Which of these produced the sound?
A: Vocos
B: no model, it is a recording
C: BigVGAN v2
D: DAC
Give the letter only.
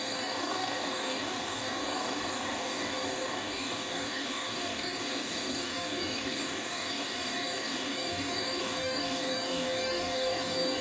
D